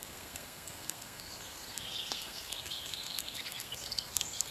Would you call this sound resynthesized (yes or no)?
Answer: yes